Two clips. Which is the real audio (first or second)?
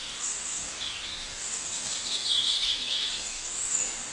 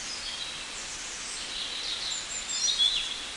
second